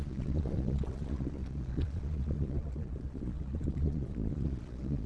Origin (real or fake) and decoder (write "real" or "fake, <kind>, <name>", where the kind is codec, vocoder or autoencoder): fake, vocoder, Vocos